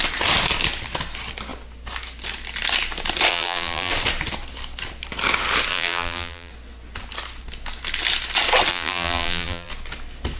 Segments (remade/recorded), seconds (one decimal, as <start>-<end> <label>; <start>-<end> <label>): 0.0-3.3 recorded; 3.3-3.9 remade; 3.9-5.7 recorded; 5.7-6.5 remade; 6.5-8.7 recorded; 8.7-9.7 remade; 9.7-10.4 recorded